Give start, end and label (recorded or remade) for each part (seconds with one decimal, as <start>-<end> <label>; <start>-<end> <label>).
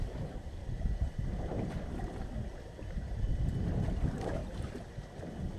0.0-0.6 remade; 0.6-3.9 recorded; 3.9-4.4 remade; 4.4-5.6 recorded